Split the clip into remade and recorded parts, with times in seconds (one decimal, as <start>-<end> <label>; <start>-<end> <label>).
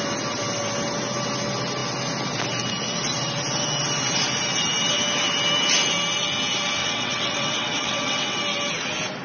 0.0-6.8 recorded; 6.8-8.4 remade; 8.4-9.2 recorded